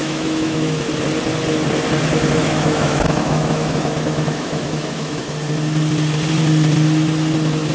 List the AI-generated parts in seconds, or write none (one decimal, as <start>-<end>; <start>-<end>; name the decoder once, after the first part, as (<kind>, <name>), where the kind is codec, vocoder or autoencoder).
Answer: 0.0-0.9 (autoencoder, DAC-VAE); 2.4-5.2